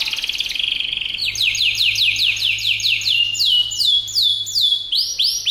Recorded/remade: recorded